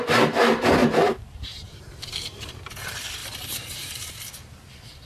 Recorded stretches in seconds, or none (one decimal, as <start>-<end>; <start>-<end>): 0.0-0.8; 2.6-3.2; 4.1-5.1